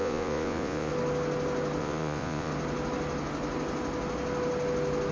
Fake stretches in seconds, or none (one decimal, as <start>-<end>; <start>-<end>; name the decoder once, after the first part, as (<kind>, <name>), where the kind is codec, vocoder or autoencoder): 0.0-0.9 (vocoder, Vocos); 1.8-2.5